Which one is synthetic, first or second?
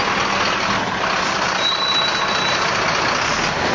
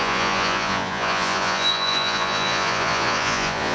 second